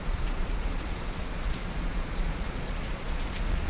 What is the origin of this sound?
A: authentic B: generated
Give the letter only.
B